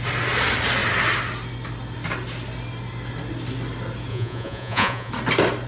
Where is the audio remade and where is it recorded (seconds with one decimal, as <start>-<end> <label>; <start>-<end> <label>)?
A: 0.0-4.1 recorded; 4.1-5.1 remade; 5.1-5.7 recorded